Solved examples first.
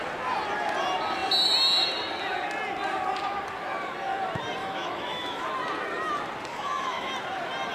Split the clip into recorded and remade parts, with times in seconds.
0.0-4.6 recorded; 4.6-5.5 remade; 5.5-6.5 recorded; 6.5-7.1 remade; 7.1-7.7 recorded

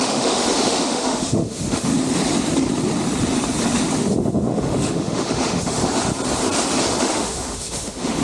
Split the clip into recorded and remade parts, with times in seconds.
0.0-1.9 remade; 1.9-4.2 recorded; 4.2-5.8 remade; 5.8-7.0 recorded; 7.0-8.2 remade

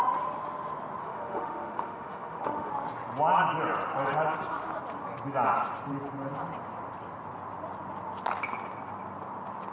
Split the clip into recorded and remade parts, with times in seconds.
0.0-1.0 recorded; 1.0-2.7 remade; 2.7-9.7 recorded

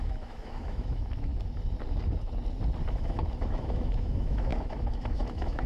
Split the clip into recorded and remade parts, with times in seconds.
0.0-1.3 remade; 1.3-2.9 recorded; 2.9-5.7 remade

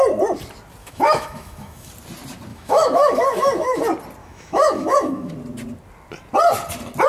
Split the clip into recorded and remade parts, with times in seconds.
0.0-0.8 recorded; 0.8-1.9 remade; 1.9-2.5 recorded; 2.5-3.8 remade; 3.8-4.2 recorded; 4.2-5.3 remade; 5.3-7.1 recorded

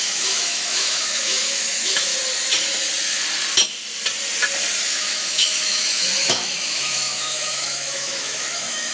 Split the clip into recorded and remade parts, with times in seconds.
0.0-2.1 remade; 2.1-4.9 recorded; 4.9-8.9 remade

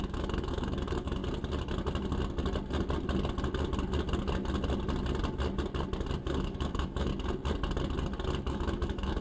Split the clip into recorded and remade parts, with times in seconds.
0.0-1.2 remade; 1.2-6.2 recorded; 6.2-7.1 remade; 7.1-8.4 recorded; 8.4-9.2 remade

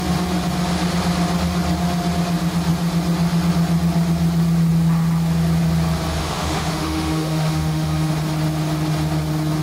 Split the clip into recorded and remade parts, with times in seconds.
0.0-6.2 recorded; 6.2-8.1 remade; 8.1-9.6 recorded